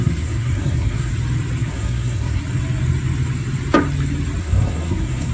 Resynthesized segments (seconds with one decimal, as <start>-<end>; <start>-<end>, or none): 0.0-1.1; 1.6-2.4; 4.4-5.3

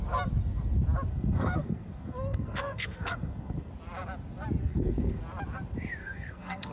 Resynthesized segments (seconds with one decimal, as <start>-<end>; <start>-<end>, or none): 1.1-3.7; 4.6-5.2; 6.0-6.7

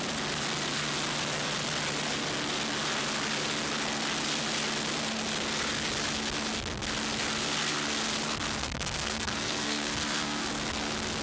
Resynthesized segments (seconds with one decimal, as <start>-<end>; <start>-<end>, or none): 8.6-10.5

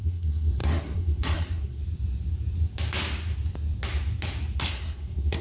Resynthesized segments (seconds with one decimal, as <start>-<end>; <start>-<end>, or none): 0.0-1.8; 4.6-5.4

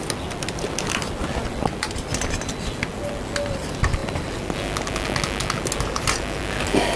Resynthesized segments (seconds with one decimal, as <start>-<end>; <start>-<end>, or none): none

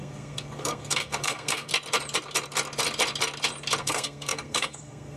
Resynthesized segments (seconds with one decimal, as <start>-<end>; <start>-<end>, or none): 0.0-1.7; 3.8-5.2

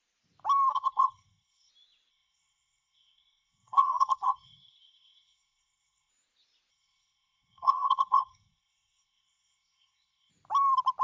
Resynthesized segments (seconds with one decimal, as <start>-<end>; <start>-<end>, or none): 0.7-1.7; 2.1-6.1; 6.7-10.3

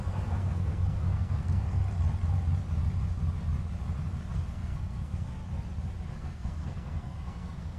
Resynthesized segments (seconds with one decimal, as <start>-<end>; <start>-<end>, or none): 0.0-1.8; 4.3-5.4; 6.2-7.8